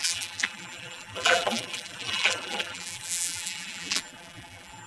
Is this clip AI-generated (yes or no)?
yes